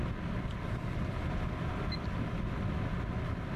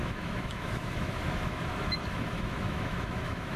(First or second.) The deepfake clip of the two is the second